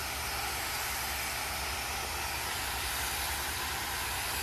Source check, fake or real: real